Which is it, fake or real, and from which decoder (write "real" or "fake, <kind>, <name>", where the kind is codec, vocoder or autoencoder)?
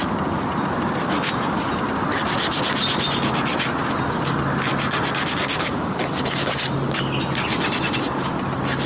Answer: real